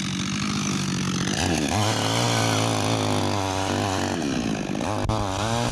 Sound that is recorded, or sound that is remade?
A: recorded